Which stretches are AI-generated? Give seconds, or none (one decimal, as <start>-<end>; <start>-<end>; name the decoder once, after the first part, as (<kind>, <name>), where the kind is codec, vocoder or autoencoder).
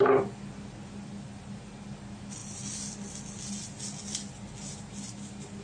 none